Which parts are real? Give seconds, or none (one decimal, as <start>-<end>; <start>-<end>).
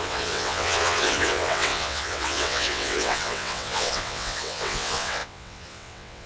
none